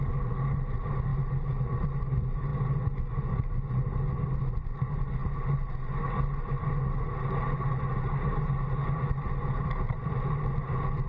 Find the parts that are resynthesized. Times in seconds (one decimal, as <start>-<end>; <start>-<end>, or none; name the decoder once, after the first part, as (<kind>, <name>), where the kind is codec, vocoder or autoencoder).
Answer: none